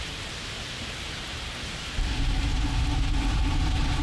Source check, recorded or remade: remade